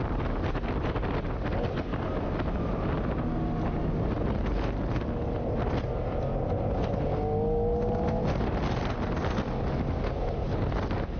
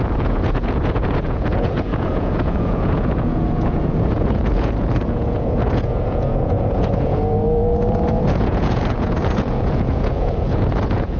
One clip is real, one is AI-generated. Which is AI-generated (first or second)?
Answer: second